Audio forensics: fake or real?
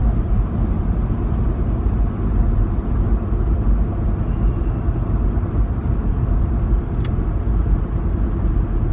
real